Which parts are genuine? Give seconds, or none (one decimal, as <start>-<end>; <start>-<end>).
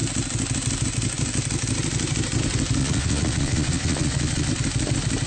0.0-2.8; 4.5-5.3